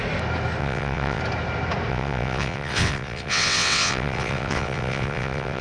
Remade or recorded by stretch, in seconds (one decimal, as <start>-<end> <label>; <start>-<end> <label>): 0.0-0.6 recorded; 0.6-1.2 remade; 1.2-1.9 recorded; 1.9-5.6 remade